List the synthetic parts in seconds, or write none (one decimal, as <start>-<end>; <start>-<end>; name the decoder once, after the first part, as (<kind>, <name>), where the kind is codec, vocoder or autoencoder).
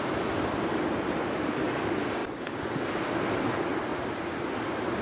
none